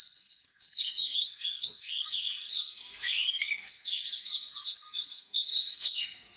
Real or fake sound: fake